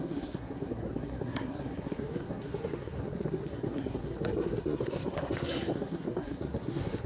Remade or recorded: remade